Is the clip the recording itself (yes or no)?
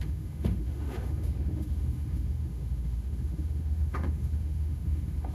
no